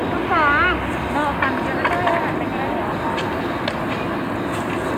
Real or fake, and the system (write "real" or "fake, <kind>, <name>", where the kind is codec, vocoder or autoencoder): real